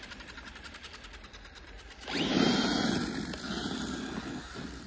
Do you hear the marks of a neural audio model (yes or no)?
no